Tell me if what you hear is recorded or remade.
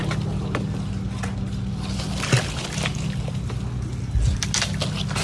recorded